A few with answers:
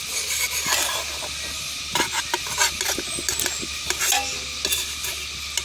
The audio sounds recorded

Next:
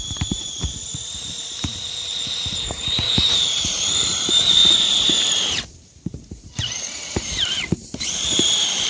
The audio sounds remade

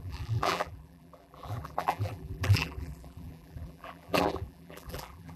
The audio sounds remade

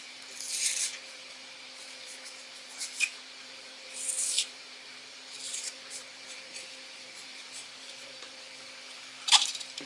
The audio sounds remade